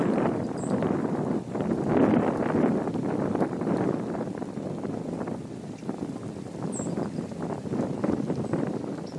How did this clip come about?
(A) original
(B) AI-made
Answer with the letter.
A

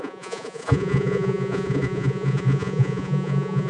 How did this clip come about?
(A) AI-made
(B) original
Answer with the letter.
A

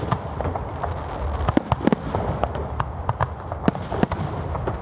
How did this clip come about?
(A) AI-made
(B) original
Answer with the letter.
B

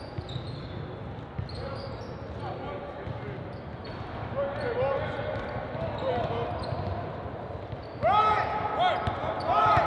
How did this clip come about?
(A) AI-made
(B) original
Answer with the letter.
B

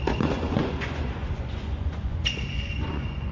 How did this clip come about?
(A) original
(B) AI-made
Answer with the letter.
B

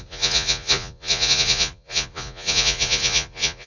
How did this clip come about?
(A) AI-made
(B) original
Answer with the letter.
A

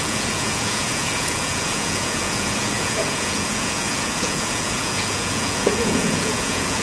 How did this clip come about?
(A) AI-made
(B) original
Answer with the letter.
A